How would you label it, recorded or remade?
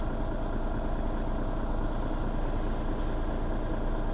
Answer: recorded